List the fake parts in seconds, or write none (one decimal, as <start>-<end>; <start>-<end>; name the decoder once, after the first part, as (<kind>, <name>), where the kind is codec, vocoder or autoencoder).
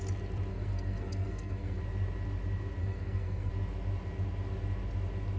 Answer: 0.5-1.8 (codec, SNAC); 2.8-3.5